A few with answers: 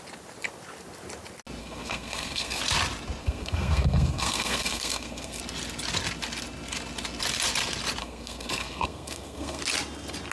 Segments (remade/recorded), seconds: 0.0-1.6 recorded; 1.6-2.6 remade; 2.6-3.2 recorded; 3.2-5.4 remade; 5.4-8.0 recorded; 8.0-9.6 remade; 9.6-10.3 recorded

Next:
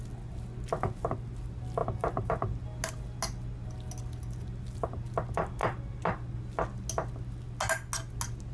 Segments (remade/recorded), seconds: 0.0-8.5 recorded

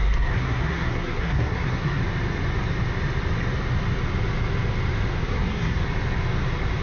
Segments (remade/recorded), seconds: 0.0-2.0 remade; 2.0-5.2 recorded; 5.2-5.8 remade; 5.8-6.8 recorded

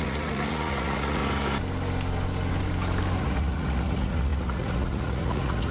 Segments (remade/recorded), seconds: 0.0-1.2 remade; 1.2-3.2 recorded; 3.2-5.7 remade

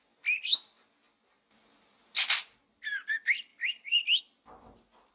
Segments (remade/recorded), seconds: 0.0-5.1 recorded